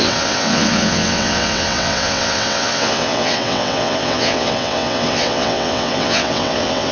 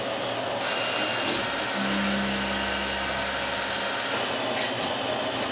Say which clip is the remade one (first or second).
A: first